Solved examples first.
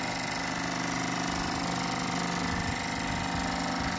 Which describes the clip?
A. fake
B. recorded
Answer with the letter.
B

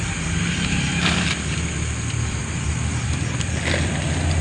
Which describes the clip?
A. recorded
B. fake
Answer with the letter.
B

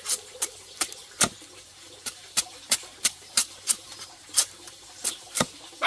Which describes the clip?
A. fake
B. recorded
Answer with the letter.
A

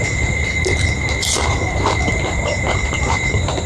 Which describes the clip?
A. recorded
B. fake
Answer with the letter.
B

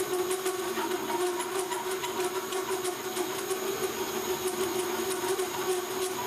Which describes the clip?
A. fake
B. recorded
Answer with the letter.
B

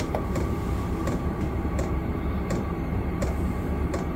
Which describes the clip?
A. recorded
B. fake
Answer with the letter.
B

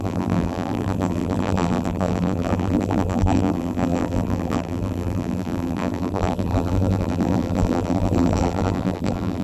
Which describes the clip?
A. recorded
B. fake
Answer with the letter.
B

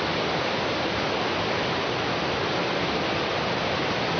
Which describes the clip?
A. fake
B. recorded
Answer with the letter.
B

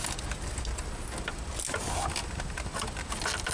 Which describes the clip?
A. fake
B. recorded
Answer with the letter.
B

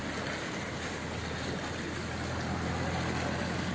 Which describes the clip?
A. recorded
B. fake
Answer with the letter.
A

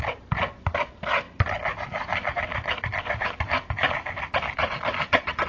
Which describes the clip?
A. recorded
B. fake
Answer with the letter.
A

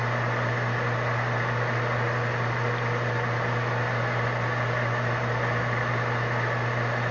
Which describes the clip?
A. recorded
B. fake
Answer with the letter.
A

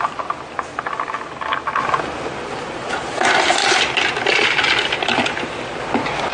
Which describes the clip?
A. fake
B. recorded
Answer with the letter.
B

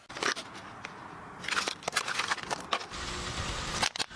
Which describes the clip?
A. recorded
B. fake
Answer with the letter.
A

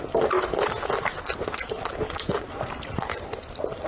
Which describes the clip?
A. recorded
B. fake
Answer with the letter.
B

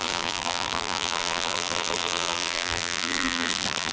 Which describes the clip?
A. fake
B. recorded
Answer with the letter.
A